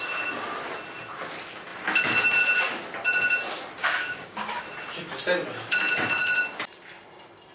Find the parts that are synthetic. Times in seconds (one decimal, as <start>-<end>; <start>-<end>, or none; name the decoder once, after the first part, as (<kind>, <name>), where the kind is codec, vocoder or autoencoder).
3.8-4.6 (codec, DAC)